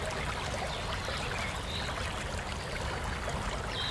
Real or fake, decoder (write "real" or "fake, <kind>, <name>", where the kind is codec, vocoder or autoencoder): real